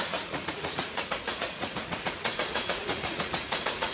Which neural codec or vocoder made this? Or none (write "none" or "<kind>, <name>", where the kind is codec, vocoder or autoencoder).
vocoder, Vocos